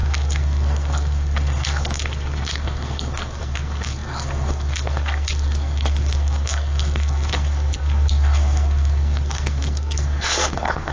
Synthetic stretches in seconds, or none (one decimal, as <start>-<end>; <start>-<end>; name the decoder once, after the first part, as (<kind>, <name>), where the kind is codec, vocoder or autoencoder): 0.0-10.9 (codec, SNAC)